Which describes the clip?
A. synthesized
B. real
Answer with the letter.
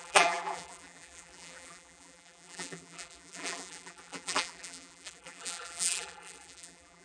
A